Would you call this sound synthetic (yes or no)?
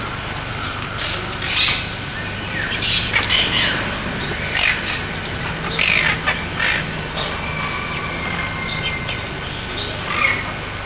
no